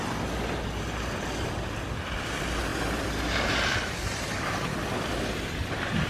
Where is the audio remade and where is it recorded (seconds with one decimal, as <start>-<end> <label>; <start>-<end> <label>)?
0.0-2.7 recorded; 2.7-6.1 remade